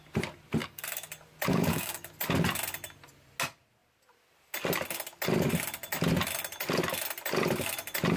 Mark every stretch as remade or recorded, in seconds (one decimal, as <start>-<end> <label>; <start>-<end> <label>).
0.0-0.6 recorded; 0.6-1.1 remade; 1.1-1.5 recorded; 1.5-2.1 remade; 2.1-8.2 recorded